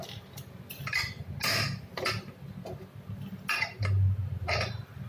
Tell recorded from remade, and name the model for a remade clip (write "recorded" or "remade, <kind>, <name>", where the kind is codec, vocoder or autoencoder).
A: recorded